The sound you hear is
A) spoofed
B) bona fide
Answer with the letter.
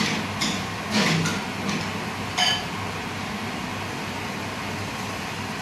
B